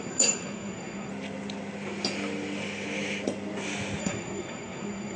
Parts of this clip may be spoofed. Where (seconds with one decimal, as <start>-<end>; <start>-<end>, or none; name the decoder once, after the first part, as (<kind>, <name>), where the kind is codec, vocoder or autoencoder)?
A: 0.0-1.1 (codec, SNAC); 4.0-5.2